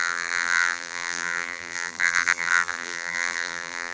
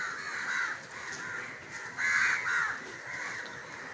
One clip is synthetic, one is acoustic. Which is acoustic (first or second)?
second